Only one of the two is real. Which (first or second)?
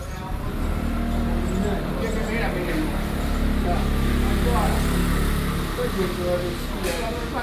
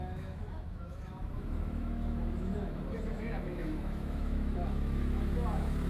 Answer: first